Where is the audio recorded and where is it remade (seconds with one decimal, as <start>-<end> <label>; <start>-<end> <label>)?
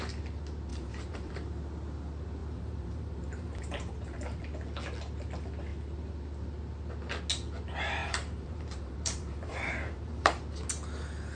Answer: 0.0-0.7 recorded; 0.7-1.3 remade; 1.3-2.4 recorded; 2.4-4.4 remade; 4.4-8.0 recorded; 8.0-10.4 remade; 10.4-11.3 recorded